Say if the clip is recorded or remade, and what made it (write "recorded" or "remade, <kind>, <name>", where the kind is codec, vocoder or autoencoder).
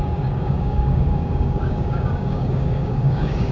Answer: remade, codec, DAC